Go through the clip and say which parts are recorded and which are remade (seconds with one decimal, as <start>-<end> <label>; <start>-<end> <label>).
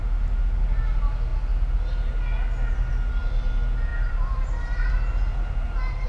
0.0-6.1 recorded